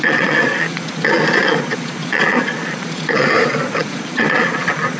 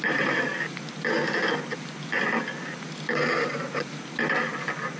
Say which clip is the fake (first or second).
first